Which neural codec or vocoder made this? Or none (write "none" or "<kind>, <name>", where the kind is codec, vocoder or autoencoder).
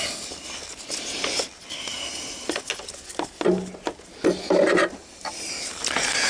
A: none